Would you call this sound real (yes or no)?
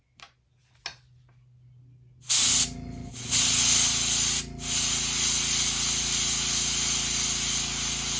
yes